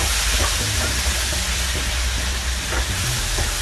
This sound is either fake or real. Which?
real